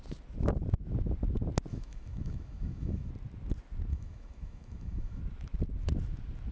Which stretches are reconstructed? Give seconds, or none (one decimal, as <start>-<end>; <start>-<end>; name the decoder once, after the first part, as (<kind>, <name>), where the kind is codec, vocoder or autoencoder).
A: 1.7-3.1 (autoencoder, DAC-VAE); 3.9-5.2